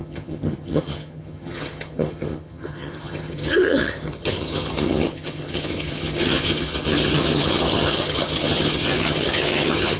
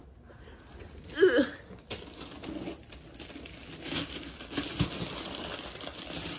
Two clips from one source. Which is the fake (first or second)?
first